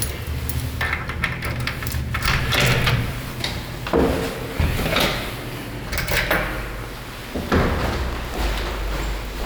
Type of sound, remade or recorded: recorded